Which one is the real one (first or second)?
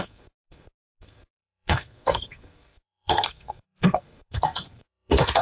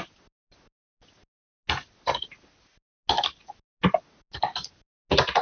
second